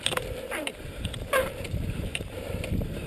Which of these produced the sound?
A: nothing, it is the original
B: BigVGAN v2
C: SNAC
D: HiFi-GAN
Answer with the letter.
B